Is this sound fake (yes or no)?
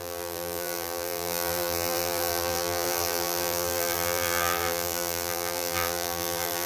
yes